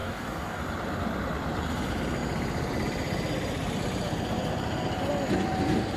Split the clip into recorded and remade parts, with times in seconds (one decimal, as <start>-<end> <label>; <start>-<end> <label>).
0.0-0.6 remade; 0.6-6.0 recorded